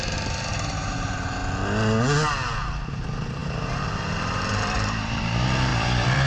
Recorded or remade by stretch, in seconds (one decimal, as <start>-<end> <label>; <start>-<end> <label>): 0.0-1.4 remade; 1.4-2.9 recorded; 2.9-6.3 remade